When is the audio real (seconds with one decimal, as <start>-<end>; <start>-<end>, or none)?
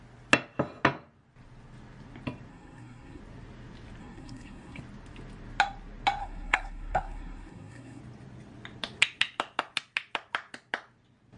0.0-2.5; 3.2-4.0; 4.8-6.2; 8.0-11.4